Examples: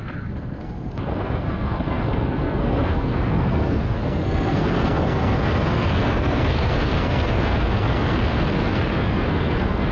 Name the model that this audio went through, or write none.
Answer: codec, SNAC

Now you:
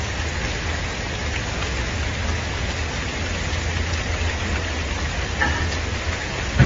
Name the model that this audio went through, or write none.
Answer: none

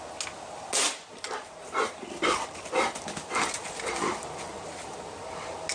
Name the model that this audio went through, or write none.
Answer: none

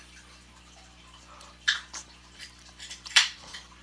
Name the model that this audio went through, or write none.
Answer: vocoder, BigVGAN v2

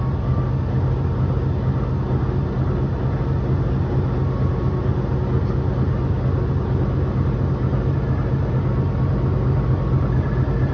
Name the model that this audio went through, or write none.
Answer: none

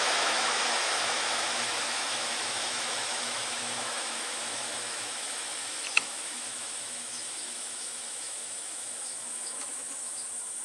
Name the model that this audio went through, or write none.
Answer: autoencoder, DAC-VAE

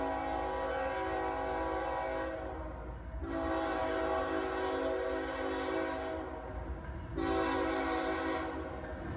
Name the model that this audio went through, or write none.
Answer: none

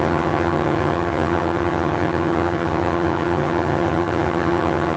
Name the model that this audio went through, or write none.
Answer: vocoder, HiFi-GAN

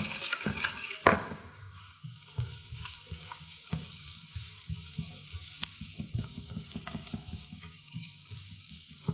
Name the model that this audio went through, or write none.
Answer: codec, DAC